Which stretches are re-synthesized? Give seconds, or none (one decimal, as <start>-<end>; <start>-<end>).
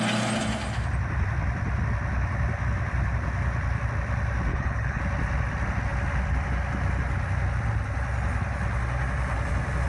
4.5-5.0